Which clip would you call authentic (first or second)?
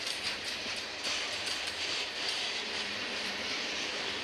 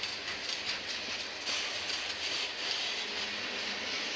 second